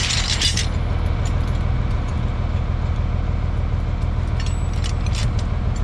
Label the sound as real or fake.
real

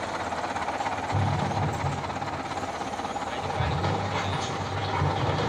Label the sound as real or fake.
real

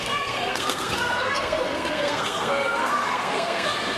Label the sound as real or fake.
fake